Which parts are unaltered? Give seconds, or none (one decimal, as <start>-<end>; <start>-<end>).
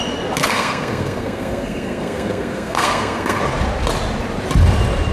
0.0-0.4; 3.4-5.1